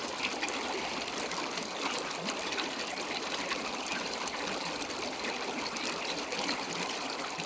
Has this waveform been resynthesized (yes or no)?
yes